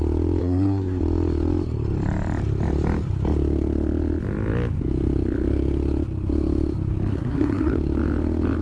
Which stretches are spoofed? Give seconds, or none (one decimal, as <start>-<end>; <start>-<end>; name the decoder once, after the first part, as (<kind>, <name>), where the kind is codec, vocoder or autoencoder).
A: 0.4-1.0 (codec, SNAC); 7.1-7.8